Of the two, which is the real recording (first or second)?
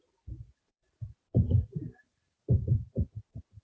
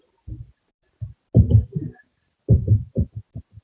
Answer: second